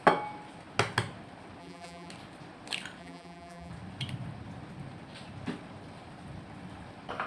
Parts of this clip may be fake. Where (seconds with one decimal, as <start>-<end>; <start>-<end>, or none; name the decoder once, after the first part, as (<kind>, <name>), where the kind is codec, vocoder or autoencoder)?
1.6-2.1 (vocoder, BigVGAN v2); 3.0-3.7

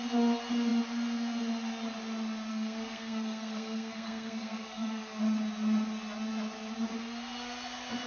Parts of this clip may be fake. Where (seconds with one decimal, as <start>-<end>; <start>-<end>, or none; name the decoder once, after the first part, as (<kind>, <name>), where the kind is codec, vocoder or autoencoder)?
2.5-5.2 (codec, SNAC)

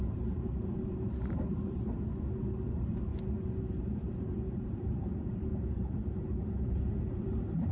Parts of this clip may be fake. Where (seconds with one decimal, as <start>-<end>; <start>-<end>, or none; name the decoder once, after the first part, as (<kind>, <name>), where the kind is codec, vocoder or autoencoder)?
0.0-2.1 (vocoder, BigVGAN v2); 2.7-3.1; 3.8-7.7

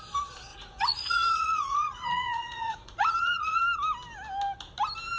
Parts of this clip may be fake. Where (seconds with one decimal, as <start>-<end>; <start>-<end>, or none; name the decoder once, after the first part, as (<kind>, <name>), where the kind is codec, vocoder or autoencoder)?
0.5-3.6 (vocoder, Vocos)

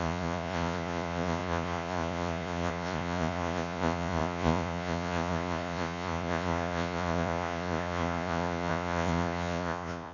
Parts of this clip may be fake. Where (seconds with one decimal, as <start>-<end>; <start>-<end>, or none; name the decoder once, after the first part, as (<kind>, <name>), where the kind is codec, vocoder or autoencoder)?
0.0-10.1 (vocoder, Vocos)